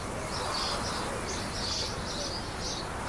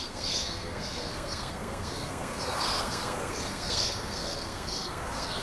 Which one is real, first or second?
first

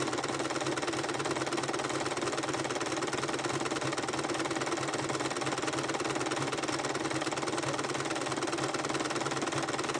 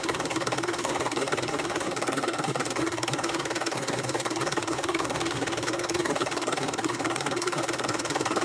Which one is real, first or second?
first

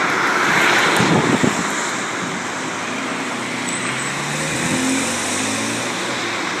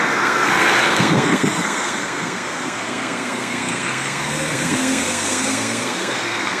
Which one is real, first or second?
first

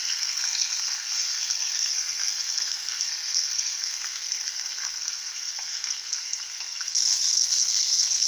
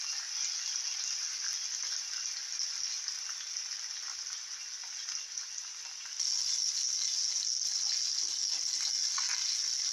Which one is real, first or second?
second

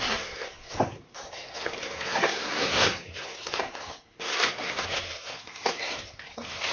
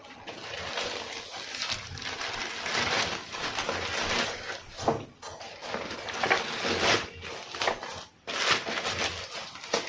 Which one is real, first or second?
second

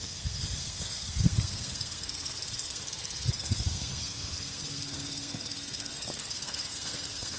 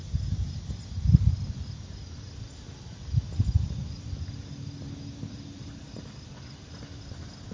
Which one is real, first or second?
second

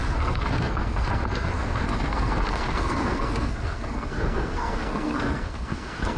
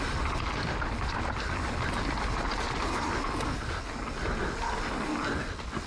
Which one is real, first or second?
second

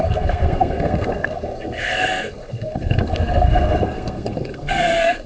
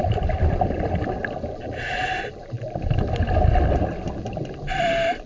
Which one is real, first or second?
second